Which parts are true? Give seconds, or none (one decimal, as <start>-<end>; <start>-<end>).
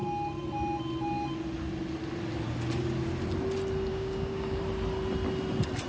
0.0-3.9; 4.6-5.9